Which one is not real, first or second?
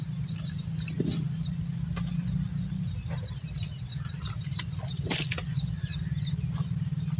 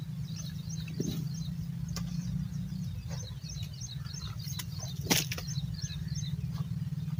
first